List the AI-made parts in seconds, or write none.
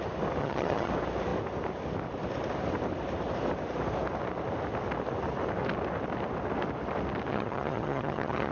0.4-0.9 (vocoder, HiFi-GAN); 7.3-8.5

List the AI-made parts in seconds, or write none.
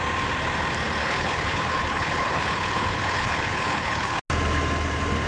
1.0-4.2 (codec, HILCodec)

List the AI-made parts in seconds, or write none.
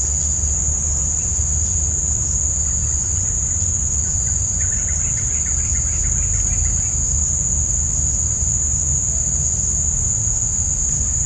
4.1-4.8 (vocoder, Vocos)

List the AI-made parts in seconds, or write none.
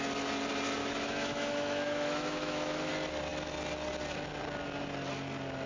0.8-2.9 (autoencoder, DAC-VAE)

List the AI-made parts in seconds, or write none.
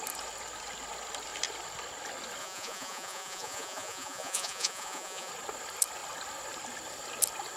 2.4-5.3 (vocoder, Vocos)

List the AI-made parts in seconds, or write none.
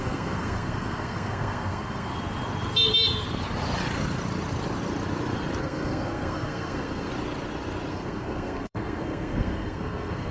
0.0-2.1 (codec, SNAC); 5.6-7.1; 7.9-10.3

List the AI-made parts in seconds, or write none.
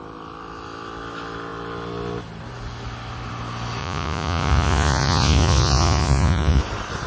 3.8-6.6 (vocoder, Vocos)